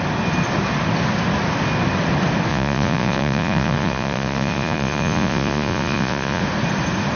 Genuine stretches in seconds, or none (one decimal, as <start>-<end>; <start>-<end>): 0.0-2.5; 6.4-7.2